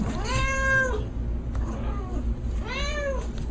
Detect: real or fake real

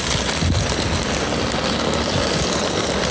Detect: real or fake real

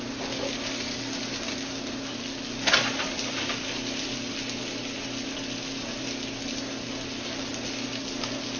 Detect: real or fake real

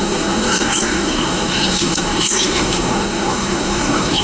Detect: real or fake fake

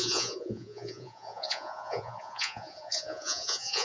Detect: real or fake fake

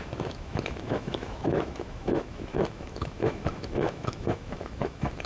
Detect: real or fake fake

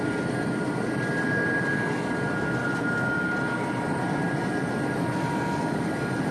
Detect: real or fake real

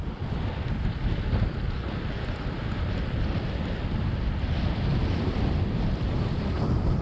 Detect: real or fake real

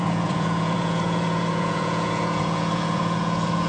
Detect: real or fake fake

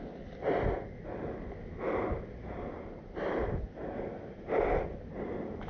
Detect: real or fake real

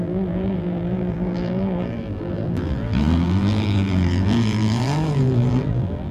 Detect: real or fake fake